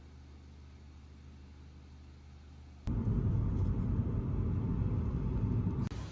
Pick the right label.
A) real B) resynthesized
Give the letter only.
A